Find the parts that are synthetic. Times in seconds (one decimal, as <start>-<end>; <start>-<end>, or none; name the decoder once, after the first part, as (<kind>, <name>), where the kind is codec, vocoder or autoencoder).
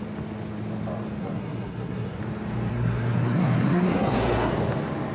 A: 1.2-2.2 (codec, SNAC); 2.7-4.5